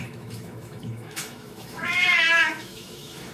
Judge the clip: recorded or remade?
remade